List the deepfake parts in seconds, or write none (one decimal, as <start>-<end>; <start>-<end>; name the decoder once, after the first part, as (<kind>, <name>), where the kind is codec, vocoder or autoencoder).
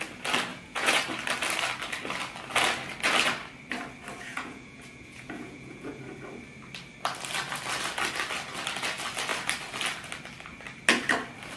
0.5-1.0 (vocoder, Vocos); 4.3-6.0